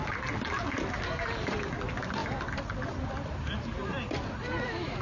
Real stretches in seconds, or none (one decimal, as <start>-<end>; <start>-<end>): 0.0-0.9; 3.9-4.4